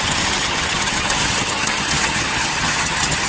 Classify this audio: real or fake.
fake